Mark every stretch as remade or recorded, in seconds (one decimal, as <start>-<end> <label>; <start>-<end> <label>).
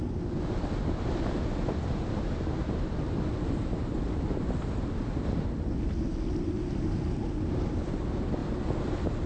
0.0-9.3 recorded